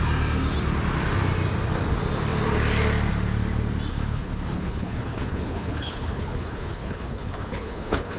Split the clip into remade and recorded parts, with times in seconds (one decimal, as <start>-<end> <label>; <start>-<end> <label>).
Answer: 0.0-3.9 recorded; 3.9-8.2 remade